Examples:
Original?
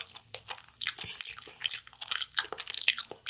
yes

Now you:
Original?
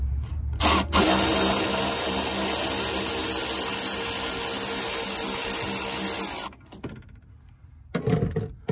yes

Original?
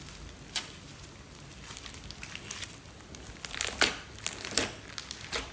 yes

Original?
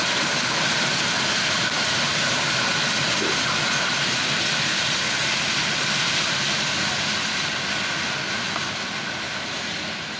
yes